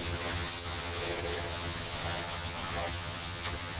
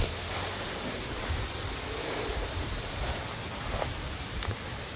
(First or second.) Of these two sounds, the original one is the second